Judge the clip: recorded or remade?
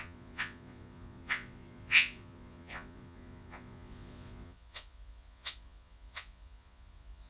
remade